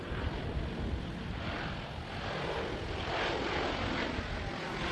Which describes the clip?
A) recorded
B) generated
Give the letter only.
A